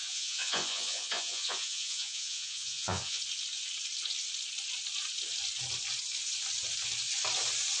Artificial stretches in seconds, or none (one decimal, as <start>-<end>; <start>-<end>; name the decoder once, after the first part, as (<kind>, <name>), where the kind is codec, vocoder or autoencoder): 0.0-3.2 (vocoder, Vocos)